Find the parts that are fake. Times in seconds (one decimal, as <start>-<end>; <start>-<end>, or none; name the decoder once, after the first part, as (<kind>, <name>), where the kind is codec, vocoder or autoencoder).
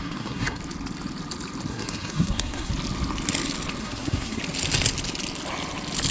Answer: 0.0-0.6 (codec, SNAC); 1.7-2.7; 3.8-4.4